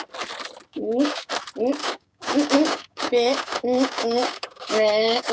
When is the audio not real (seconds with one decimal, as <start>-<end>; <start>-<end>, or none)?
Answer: 0.7-1.3; 1.8-5.3